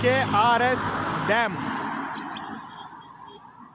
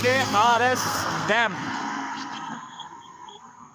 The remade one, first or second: second